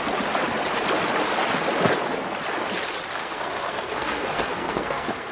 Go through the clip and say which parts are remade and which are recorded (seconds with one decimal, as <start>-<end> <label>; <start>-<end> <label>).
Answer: 0.0-3.2 recorded; 3.2-5.3 remade